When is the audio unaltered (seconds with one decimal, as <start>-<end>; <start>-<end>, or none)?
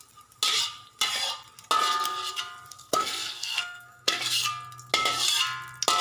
0.0-2.7; 4.5-6.0